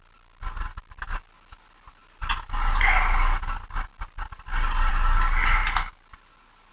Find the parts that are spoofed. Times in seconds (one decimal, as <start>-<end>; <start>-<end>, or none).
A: none